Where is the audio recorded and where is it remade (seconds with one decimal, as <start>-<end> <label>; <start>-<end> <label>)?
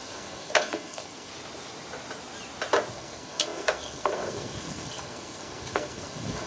0.0-1.3 remade; 1.3-2.9 recorded; 2.9-6.5 remade